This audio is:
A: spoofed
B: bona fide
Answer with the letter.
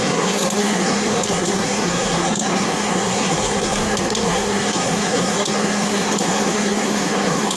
A